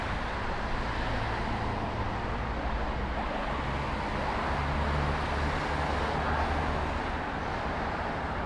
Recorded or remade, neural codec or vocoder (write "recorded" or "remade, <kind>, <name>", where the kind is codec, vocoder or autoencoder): recorded